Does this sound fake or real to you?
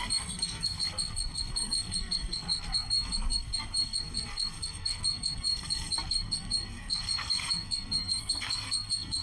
fake